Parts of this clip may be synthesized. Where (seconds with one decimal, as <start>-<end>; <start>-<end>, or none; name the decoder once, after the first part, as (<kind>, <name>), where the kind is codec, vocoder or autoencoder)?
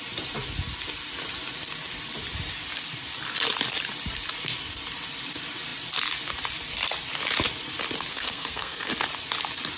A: 8.1-8.9 (codec, SNAC)